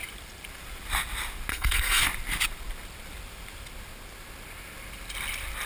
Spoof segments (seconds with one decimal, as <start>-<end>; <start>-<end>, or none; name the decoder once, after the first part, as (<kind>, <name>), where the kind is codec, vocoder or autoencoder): 1.5-2.0 (codec, SNAC)